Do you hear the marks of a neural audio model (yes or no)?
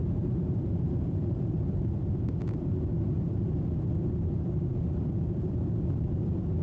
yes